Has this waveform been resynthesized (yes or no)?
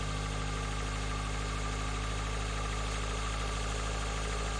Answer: no